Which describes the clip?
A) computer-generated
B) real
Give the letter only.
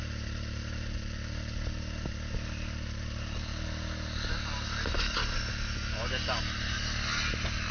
B